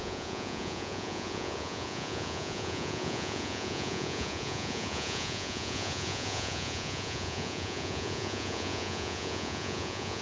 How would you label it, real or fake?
fake